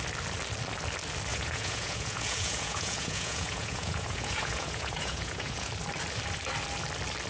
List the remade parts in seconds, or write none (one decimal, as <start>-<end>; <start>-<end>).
1.3-5.7

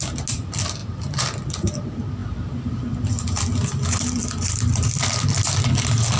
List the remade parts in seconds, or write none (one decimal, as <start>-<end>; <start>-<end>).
none

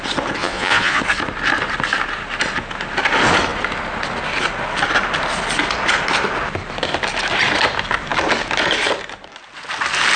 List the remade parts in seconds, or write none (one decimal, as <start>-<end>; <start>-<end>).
0.4-1.0

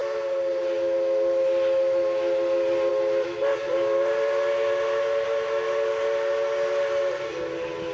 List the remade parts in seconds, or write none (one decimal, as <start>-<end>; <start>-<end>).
none

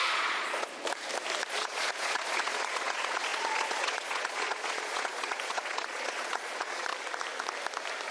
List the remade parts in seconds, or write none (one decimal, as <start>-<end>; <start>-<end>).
0.0-0.7; 1.5-6.9

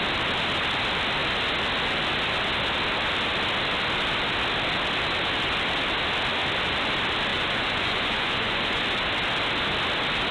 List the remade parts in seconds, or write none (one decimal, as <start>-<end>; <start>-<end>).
7.3-8.8